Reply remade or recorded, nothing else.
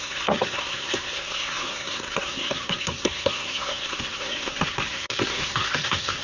remade